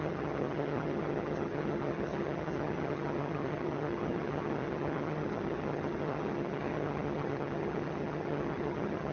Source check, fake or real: fake